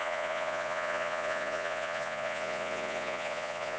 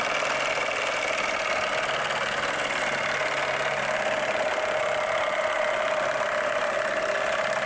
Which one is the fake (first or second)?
first